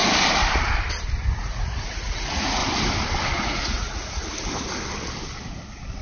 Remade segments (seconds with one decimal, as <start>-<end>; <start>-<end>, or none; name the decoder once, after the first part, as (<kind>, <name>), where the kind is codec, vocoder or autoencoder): 1.4-2.6 (vocoder, Vocos); 3.4-4.2